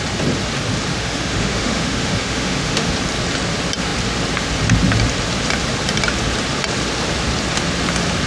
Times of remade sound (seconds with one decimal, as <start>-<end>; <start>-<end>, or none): 0.9-2.9